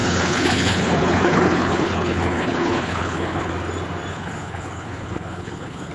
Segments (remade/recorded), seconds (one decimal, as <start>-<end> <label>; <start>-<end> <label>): 0.0-3.5 remade; 3.5-4.1 recorded; 4.1-5.9 remade